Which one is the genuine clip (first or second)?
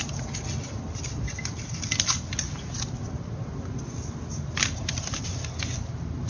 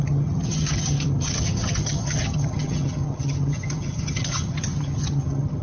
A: first